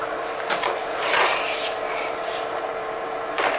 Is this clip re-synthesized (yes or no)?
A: yes